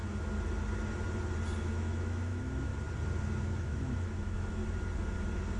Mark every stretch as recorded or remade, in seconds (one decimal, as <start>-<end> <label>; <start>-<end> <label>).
0.0-1.6 recorded; 1.6-2.7 remade; 2.7-3.4 recorded; 3.4-4.6 remade; 4.6-5.6 recorded